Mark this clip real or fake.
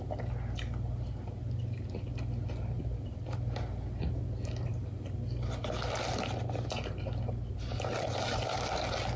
real